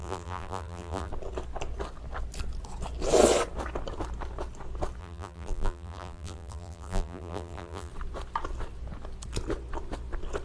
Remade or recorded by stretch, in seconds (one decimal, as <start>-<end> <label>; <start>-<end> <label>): 0.0-1.1 remade; 1.1-5.0 recorded; 5.0-7.9 remade; 7.9-10.4 recorded